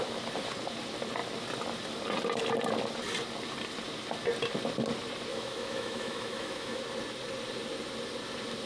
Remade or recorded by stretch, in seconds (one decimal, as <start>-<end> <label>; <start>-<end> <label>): 0.0-5.3 recorded; 5.3-6.8 remade; 6.8-8.7 recorded